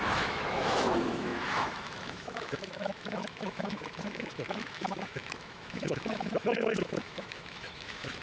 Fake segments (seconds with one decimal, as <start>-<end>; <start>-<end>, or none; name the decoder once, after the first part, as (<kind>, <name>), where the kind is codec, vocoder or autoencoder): 0.0-8.2 (autoencoder, DAC-VAE)